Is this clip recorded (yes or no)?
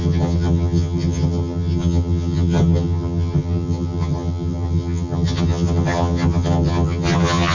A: no